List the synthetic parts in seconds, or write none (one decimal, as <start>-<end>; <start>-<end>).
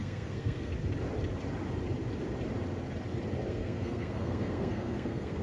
0.0-0.7; 3.5-5.4